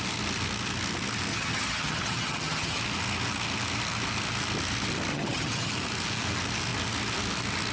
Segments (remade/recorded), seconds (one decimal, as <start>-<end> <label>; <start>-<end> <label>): 0.0-1.3 recorded; 1.3-2.8 remade; 2.8-5.1 recorded; 5.1-5.7 remade; 5.7-7.7 recorded